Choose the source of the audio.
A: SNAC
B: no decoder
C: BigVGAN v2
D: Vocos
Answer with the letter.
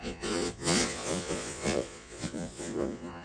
D